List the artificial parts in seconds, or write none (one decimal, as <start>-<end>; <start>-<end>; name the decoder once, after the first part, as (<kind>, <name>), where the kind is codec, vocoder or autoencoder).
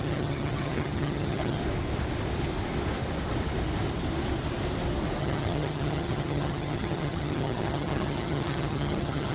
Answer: 0.0-1.6 (vocoder, HiFi-GAN); 5.2-9.3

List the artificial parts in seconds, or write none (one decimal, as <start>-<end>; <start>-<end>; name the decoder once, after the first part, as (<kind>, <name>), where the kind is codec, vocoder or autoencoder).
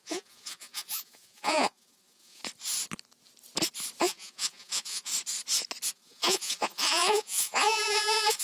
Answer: 0.0-2.4 (vocoder, Vocos); 4.0-5.1; 5.9-8.4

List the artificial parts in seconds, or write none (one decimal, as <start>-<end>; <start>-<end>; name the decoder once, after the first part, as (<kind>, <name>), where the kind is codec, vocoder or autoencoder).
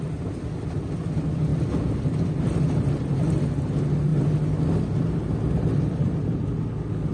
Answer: none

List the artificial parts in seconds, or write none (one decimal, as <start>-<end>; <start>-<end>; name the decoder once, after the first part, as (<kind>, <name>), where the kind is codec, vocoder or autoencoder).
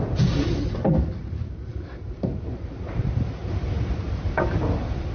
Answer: 0.0-5.1 (vocoder, BigVGAN v2)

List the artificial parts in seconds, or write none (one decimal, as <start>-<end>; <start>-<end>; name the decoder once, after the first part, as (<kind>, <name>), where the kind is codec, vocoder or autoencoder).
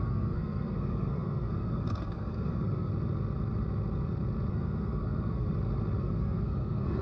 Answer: 0.0-2.9 (codec, SNAC); 4.5-5.5; 6.0-7.0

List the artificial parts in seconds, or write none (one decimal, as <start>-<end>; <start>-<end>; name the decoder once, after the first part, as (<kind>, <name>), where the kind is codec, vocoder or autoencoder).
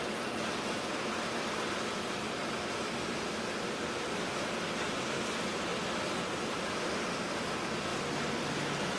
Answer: none